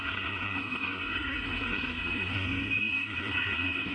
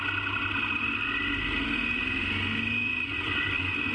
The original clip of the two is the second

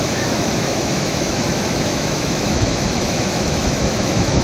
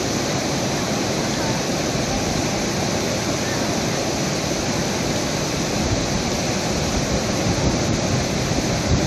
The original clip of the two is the second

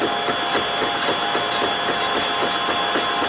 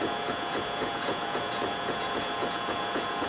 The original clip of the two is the first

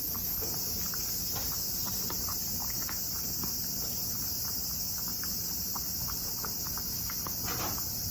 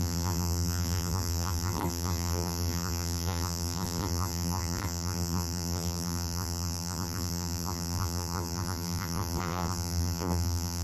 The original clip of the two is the first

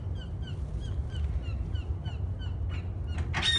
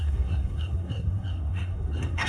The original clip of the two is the first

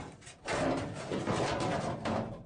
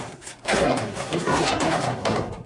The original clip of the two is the first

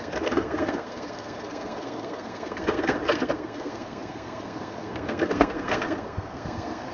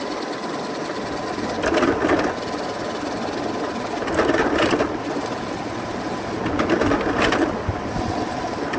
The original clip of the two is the second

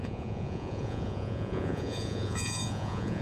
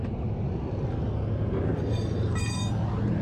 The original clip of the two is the second